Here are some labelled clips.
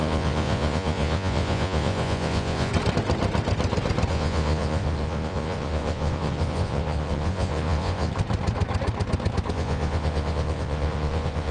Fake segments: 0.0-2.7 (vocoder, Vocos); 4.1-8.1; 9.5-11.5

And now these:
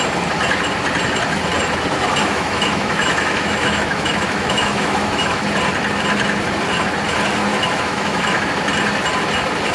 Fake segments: 2.2-5.4 (autoencoder, DAC-VAE); 7.5-8.4